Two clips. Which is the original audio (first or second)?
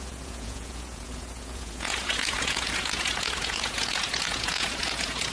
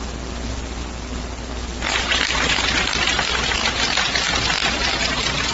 second